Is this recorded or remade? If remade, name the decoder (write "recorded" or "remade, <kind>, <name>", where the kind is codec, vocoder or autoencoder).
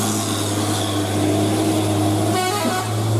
recorded